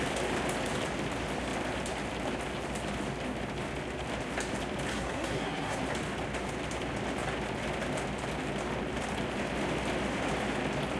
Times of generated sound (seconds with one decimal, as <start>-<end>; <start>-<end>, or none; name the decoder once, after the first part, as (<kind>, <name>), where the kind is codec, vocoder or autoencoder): 4.9-5.8 (codec, SNAC)